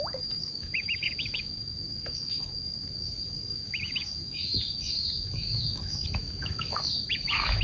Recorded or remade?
remade